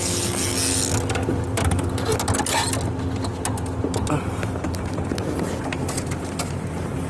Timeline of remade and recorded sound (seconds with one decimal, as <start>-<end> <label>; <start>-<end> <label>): 0.0-7.1 recorded